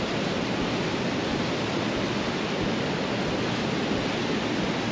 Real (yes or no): yes